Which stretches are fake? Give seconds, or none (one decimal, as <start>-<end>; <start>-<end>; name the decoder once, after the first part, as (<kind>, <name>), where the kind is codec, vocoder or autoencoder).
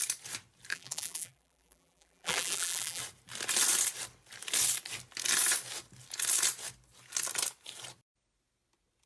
0.7-3.0 (vocoder, BigVGAN v2)